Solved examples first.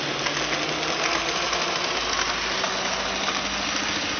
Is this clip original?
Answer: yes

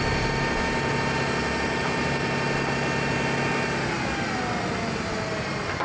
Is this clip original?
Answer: yes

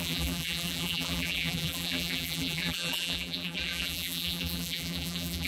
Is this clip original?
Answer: no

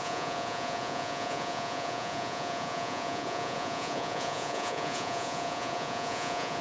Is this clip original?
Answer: no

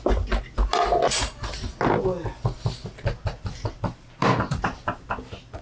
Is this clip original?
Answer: yes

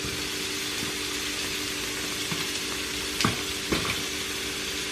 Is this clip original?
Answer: yes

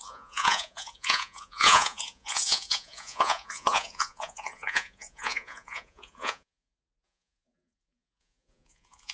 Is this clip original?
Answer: no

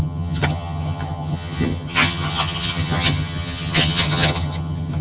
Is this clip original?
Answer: no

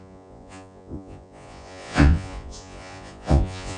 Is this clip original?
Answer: no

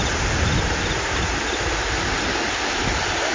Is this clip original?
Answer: yes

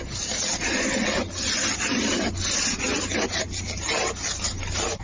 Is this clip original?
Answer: yes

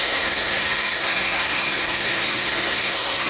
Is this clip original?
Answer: no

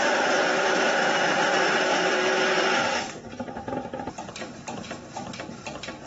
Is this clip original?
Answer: no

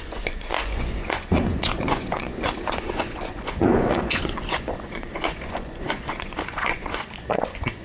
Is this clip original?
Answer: no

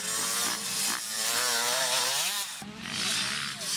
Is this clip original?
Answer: yes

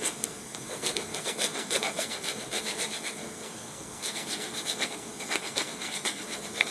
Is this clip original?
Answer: no